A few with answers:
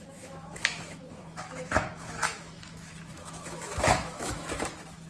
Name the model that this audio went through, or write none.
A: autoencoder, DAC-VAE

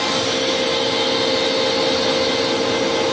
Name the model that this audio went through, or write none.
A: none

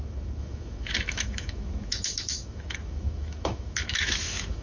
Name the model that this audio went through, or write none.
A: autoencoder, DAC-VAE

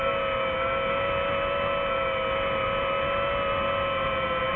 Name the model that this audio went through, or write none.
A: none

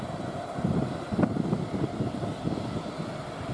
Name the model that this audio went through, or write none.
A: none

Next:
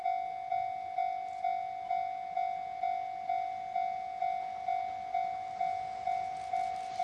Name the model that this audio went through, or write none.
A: none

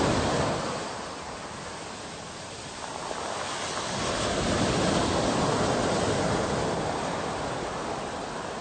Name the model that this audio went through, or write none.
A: none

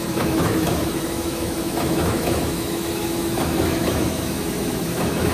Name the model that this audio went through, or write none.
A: autoencoder, DAC-VAE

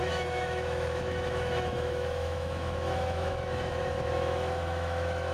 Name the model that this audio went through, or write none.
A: autoencoder, DAC-VAE